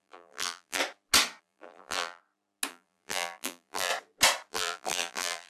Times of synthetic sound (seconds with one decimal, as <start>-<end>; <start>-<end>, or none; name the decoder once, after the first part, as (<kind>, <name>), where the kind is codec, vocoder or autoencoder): 0.0-0.8 (vocoder, BigVGAN v2); 1.4-2.2; 2.7-3.9; 4.5-5.5